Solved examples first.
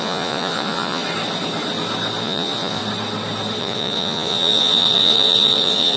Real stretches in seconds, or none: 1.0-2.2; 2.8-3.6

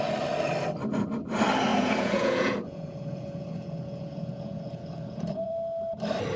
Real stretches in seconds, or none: 0.0-1.7; 5.5-6.4

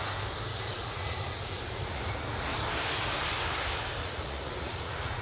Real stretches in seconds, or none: 0.0-0.5; 2.5-4.0

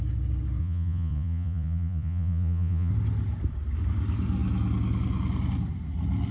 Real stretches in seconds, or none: 0.0-0.6; 2.9-6.3

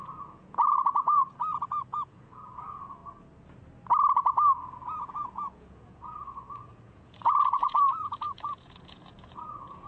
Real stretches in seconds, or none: 3.0-5.1

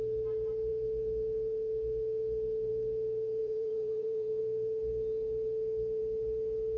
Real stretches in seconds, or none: 0.0-3.4; 4.4-6.8

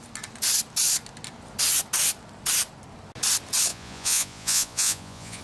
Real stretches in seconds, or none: 0.0-3.7